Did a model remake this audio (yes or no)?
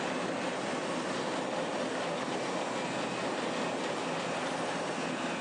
no